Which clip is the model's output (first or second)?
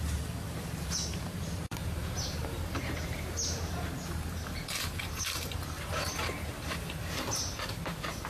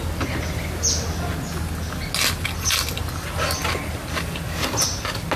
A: first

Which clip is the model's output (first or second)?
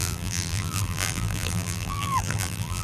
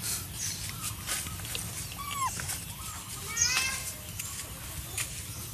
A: first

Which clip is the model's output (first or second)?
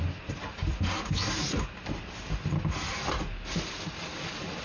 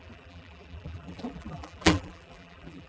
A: second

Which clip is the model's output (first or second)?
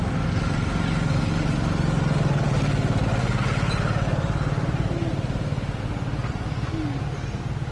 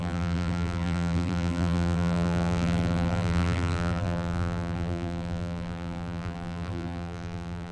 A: second